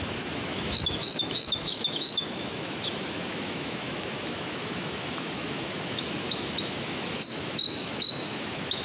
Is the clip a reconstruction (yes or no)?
yes